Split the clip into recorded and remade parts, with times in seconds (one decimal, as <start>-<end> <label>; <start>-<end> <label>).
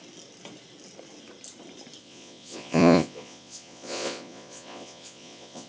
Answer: 0.0-2.0 recorded; 2.0-5.7 remade